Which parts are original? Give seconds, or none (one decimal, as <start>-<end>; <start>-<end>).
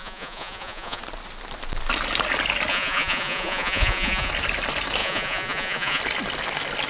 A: 1.0-2.7; 4.3-5.0; 6.0-6.9